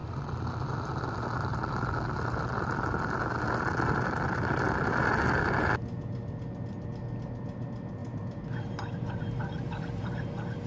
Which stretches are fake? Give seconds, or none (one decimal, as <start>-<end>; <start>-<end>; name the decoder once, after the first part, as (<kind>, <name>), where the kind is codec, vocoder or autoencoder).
none